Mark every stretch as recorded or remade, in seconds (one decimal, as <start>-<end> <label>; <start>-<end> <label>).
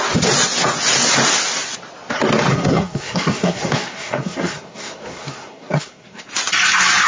0.0-2.5 recorded; 2.5-6.2 remade; 6.2-7.1 recorded